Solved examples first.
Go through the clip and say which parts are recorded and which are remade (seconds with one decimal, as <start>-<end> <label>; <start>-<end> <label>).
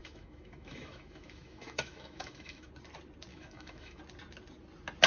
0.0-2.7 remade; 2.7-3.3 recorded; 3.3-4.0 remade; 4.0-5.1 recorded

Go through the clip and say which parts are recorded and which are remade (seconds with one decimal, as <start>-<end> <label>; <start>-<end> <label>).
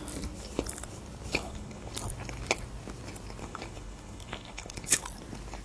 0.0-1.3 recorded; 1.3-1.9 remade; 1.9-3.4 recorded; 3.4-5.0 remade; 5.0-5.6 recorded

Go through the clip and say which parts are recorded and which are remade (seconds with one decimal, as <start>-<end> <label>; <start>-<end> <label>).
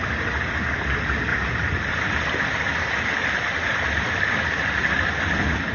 0.0-1.3 recorded; 1.3-3.9 remade; 3.9-5.7 recorded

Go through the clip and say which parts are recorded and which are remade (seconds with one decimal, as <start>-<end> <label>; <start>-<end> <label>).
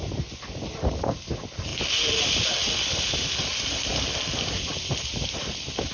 0.0-5.9 recorded